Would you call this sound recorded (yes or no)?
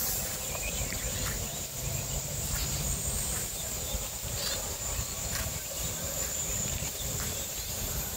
no